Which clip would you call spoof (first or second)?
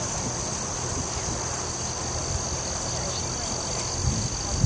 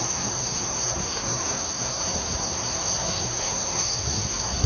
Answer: second